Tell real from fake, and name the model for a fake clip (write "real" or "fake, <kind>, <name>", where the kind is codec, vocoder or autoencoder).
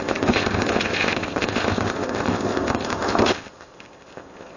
fake, codec, ZipCodec